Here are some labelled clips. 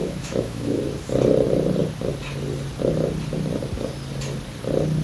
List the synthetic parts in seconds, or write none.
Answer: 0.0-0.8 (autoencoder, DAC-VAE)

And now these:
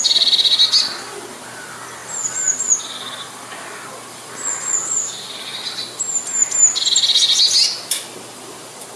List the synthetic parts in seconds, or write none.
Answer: none

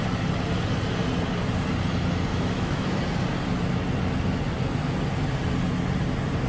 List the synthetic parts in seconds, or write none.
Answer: 2.3-3.0 (autoencoder, DAC-VAE)